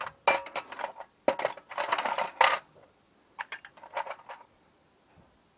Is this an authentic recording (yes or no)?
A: yes